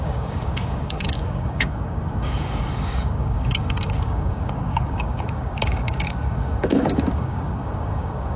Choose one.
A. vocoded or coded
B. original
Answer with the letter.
A